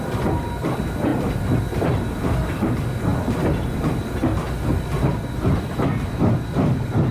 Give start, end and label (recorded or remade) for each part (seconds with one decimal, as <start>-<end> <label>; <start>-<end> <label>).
0.0-7.1 recorded